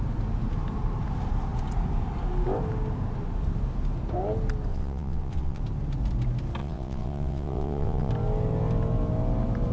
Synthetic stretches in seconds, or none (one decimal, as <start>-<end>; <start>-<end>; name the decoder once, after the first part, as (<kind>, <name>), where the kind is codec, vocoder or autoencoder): 4.7-5.6 (vocoder, WaveNeXt); 6.6-8.1